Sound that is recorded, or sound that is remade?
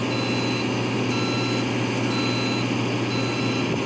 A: recorded